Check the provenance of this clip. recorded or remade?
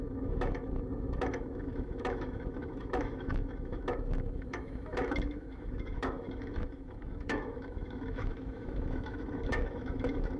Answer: remade